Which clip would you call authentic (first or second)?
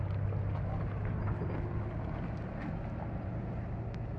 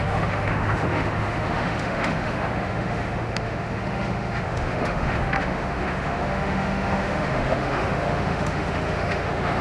first